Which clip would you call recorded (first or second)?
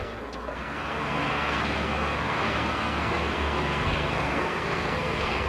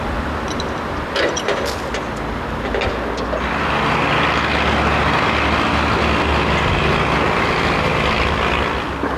second